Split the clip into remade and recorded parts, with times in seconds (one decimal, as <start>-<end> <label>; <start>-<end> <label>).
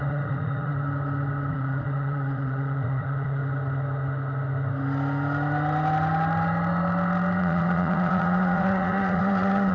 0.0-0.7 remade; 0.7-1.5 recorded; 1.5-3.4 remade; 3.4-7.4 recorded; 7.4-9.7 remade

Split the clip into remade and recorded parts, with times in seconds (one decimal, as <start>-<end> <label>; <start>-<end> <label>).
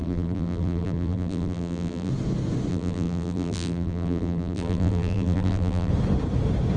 0.0-2.1 remade; 2.1-2.7 recorded; 2.7-5.9 remade; 5.9-6.8 recorded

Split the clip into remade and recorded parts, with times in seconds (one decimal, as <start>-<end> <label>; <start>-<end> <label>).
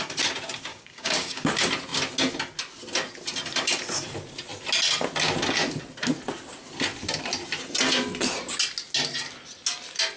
0.0-0.7 recorded; 0.7-1.5 remade; 1.5-10.2 recorded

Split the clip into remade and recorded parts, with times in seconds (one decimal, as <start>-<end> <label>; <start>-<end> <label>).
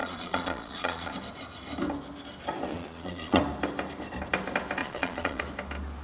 0.0-1.1 remade; 1.1-2.7 recorded; 2.7-3.4 remade; 3.4-4.8 recorded; 4.8-5.4 remade; 5.4-6.0 recorded